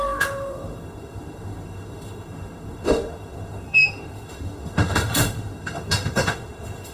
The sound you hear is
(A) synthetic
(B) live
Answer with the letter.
A